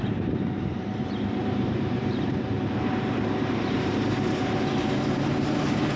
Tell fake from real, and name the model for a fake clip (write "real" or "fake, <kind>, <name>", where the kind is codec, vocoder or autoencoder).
fake, vocoder, BigVGAN v2